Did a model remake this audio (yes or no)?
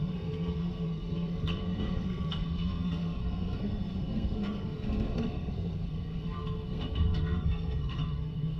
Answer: yes